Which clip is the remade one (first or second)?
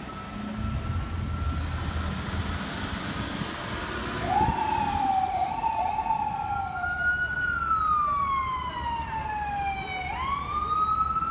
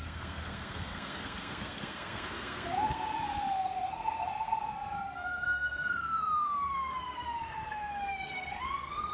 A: second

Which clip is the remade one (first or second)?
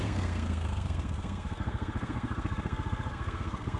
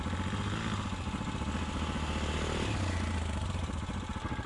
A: first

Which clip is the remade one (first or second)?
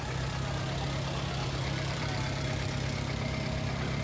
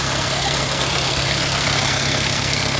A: second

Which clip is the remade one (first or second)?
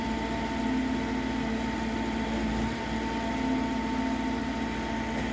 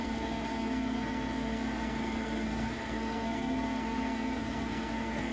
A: second